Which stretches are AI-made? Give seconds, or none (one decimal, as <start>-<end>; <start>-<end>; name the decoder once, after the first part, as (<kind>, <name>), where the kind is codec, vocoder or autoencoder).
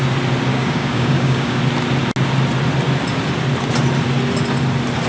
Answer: 0.5-1.6 (codec, DAC)